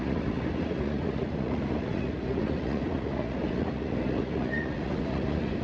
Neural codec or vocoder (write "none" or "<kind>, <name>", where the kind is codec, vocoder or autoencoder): vocoder, Vocos